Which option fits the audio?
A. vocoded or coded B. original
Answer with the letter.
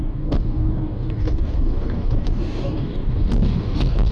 A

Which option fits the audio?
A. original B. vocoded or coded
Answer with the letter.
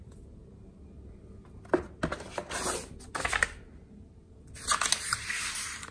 A